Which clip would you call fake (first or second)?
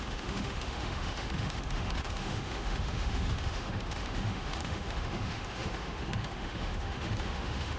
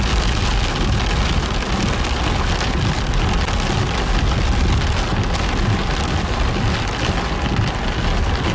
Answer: first